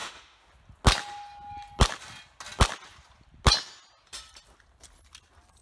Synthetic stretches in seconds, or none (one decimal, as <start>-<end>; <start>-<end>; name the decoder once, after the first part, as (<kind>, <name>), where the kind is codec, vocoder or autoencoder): 0.0-0.5 (autoencoder, DAC-VAE)